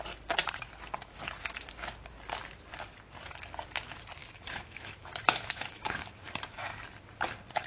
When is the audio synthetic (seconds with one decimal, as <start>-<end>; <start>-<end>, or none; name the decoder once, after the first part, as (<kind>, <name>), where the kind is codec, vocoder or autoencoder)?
4.2-6.1 (autoencoder, DAC-VAE)